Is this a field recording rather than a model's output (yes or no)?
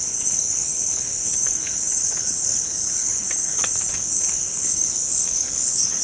no